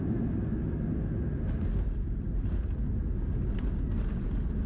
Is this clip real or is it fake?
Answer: real